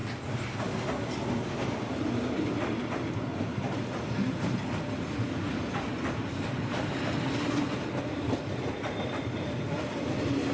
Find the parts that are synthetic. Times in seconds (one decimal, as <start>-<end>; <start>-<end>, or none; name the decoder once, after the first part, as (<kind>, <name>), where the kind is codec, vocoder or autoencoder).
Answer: none